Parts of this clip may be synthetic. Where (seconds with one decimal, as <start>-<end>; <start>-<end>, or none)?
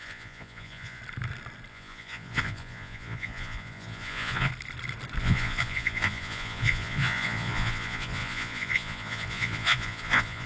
0.0-1.0; 1.7-4.5; 5.2-10.5